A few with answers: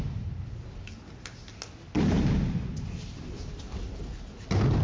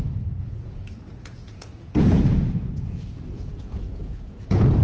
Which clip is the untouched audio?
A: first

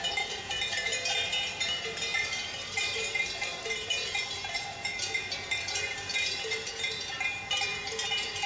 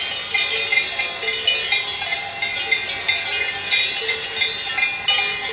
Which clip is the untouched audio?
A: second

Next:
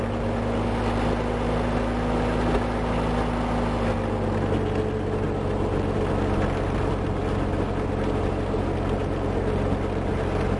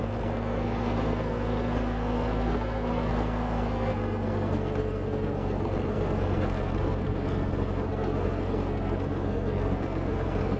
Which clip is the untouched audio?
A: first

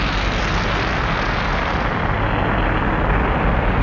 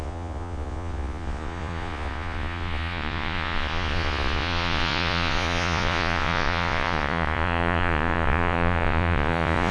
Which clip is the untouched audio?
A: first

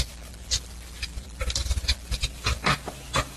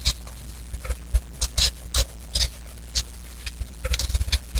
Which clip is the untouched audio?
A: second